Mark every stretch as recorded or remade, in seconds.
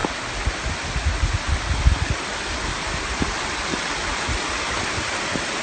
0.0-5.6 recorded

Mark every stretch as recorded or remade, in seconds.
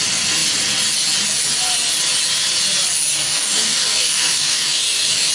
0.0-3.1 recorded; 3.1-5.3 remade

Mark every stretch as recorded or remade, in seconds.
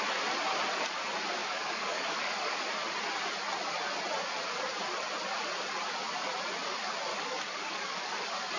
0.0-1.4 recorded; 1.4-2.6 remade; 2.6-7.1 recorded; 7.1-8.2 remade; 8.2-8.6 recorded